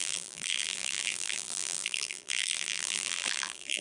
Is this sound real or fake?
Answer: fake